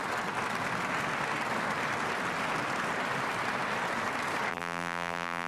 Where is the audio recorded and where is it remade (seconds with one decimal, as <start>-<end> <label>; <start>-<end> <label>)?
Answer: 0.0-4.5 recorded; 4.5-5.5 remade